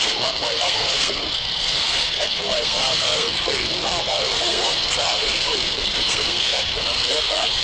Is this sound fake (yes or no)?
yes